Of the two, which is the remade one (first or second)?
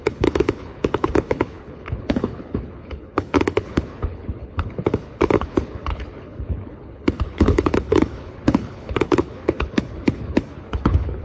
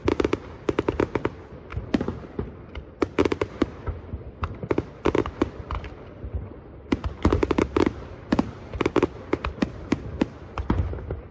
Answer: first